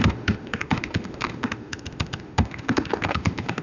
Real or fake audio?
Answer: fake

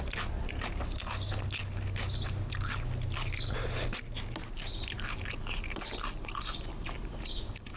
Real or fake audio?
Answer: real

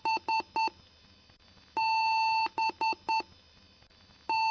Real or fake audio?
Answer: real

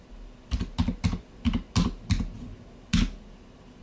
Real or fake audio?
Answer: real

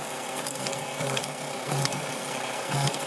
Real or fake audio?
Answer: fake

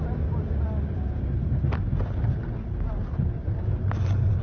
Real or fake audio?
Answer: real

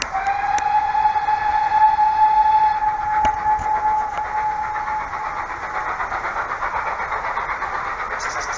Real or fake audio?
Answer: real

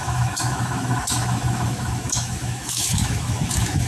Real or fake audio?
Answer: fake